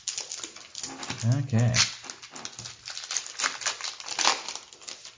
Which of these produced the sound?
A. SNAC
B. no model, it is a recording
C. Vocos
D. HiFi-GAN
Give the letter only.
B